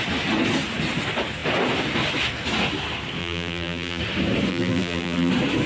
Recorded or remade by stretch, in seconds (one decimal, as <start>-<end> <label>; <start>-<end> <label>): 0.0-3.2 recorded; 3.2-4.0 remade; 4.0-4.5 recorded; 4.5-5.3 remade; 5.3-5.7 recorded